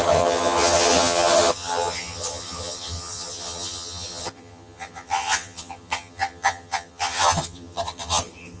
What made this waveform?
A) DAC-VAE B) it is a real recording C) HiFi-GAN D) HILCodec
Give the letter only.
C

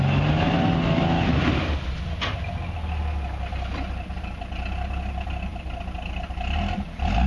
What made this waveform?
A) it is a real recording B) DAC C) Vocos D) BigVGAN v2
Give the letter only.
A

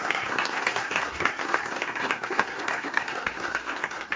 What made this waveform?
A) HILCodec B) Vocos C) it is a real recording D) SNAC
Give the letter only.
D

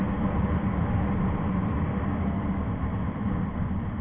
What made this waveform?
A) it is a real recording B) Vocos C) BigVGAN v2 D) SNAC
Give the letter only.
A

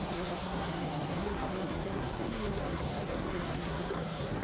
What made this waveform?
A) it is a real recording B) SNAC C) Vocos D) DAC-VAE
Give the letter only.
B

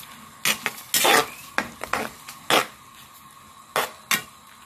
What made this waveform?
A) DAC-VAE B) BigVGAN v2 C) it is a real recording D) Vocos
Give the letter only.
C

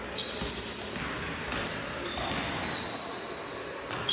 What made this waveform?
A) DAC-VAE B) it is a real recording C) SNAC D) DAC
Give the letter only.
B